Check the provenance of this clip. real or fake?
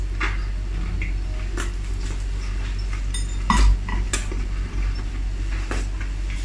real